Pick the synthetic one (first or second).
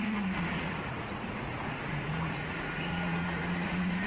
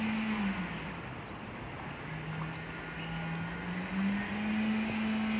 first